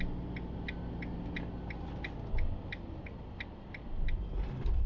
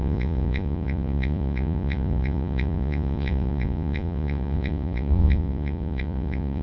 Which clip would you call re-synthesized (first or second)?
second